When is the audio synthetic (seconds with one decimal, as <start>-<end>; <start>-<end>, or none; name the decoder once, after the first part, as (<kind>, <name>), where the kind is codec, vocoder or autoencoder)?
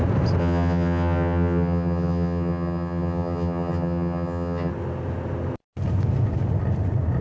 0.4-4.7 (vocoder, HiFi-GAN)